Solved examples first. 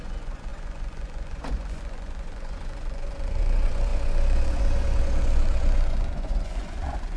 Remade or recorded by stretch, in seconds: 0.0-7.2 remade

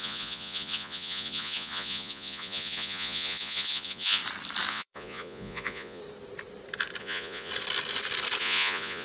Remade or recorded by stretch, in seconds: 0.0-4.2 remade; 4.2-4.7 recorded; 4.7-6.0 remade; 6.0-7.0 recorded; 7.0-7.5 remade; 7.5-8.4 recorded; 8.4-9.0 remade

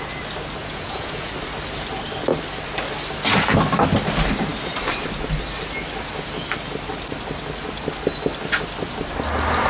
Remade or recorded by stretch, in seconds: 0.0-0.6 recorded; 0.6-1.3 remade; 1.3-9.7 recorded

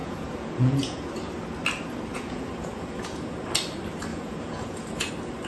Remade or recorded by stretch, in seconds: 0.0-1.1 remade; 1.1-2.1 recorded; 2.1-3.3 remade; 3.3-4.1 recorded; 4.1-5.1 remade; 5.1-5.5 recorded

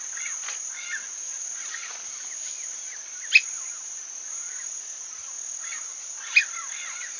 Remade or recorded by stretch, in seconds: 0.0-7.2 recorded

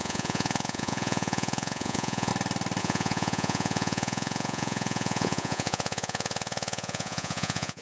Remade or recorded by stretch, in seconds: 0.0-2.3 remade; 2.3-2.8 recorded; 2.8-7.8 remade

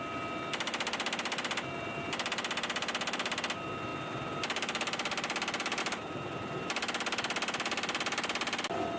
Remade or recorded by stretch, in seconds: 0.0-9.0 recorded